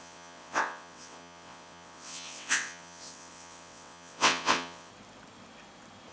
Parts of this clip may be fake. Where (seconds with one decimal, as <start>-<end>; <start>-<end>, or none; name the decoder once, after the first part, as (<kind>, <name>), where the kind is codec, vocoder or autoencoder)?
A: 0.0-4.9 (vocoder, WaveNeXt)